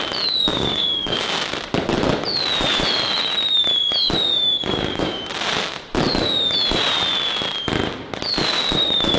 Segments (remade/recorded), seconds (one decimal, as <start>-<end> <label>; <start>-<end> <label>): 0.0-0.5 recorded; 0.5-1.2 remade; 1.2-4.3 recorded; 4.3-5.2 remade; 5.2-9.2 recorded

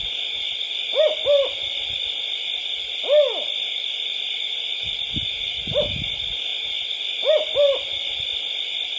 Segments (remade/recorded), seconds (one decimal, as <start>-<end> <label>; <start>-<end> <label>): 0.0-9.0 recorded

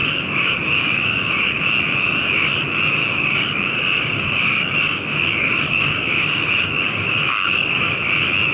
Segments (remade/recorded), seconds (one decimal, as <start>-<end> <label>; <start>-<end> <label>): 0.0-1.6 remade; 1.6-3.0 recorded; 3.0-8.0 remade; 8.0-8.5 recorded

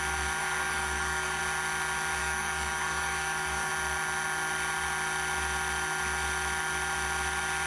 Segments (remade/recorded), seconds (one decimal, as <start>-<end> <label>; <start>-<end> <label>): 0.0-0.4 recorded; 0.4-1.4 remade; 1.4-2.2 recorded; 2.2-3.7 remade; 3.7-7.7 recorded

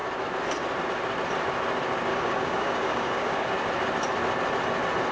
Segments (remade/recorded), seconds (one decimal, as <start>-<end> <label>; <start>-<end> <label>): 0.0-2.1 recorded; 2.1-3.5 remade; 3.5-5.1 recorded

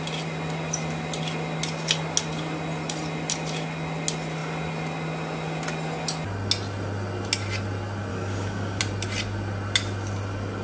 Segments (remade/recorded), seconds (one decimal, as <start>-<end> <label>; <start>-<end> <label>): 0.0-8.1 recorded; 8.1-8.8 remade; 8.8-10.6 recorded